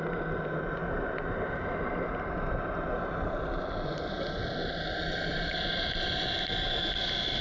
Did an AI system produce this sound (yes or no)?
no